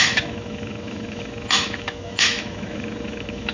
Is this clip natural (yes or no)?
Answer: no